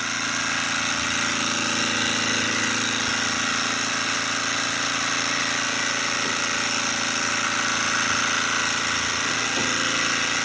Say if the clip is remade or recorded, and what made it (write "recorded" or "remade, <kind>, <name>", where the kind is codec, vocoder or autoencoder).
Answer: recorded